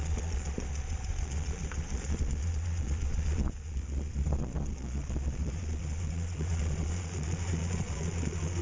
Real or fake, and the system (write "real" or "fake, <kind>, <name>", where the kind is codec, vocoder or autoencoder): fake, vocoder, Vocos